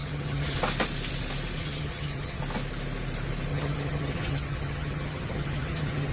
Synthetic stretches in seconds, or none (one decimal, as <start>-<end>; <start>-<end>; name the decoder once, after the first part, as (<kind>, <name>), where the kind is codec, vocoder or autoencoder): 0.0-0.6 (vocoder, HiFi-GAN); 1.6-2.4; 3.5-6.1